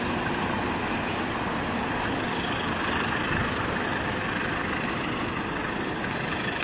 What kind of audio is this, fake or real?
real